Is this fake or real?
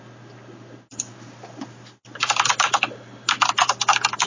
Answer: real